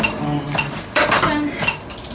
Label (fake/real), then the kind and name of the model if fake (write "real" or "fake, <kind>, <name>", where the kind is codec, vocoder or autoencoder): real